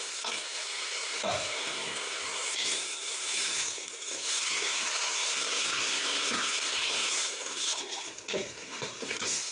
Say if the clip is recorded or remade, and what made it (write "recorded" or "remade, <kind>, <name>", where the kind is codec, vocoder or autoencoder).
remade, codec, SNAC